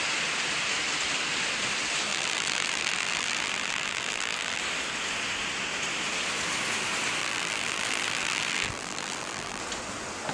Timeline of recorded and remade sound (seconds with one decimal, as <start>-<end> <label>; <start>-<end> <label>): 0.0-2.1 recorded; 2.1-4.6 remade; 4.6-7.2 recorded; 7.2-9.6 remade; 9.6-10.3 recorded